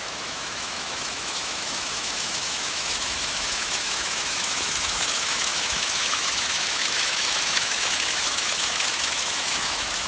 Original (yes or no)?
no